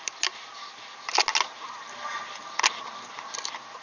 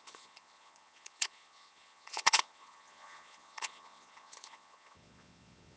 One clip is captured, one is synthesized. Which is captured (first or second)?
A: first